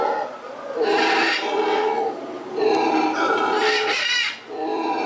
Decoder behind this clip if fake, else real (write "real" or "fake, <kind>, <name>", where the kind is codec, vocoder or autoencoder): real